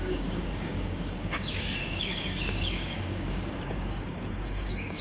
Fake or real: fake